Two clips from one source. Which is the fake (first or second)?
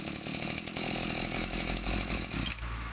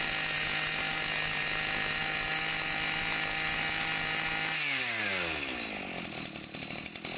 first